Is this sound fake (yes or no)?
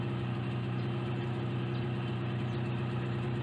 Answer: no